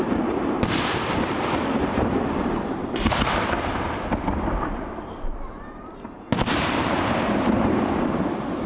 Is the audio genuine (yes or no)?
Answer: no